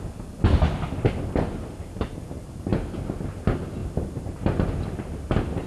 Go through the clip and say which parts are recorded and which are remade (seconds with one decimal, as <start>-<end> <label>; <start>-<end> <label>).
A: 0.0-5.7 recorded